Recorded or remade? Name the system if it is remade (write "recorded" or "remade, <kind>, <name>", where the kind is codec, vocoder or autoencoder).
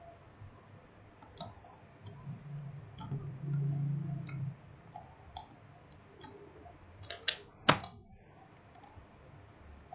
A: recorded